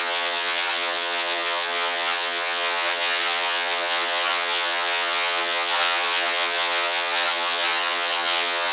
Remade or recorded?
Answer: remade